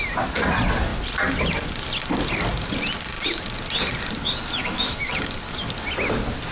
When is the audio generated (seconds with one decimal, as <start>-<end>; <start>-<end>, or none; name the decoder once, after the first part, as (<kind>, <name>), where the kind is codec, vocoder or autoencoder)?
4.6-5.2 (autoencoder, DAC-VAE)